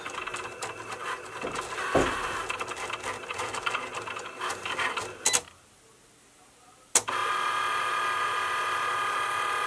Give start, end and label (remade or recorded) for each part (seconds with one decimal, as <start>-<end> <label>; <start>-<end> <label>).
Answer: 0.0-9.7 recorded